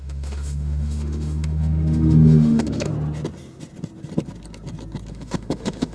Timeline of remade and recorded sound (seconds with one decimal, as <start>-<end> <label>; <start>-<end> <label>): 0.0-2.9 remade; 2.9-5.1 recorded; 5.1-5.9 remade